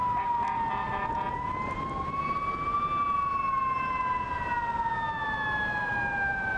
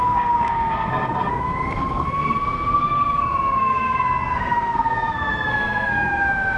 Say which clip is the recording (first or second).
first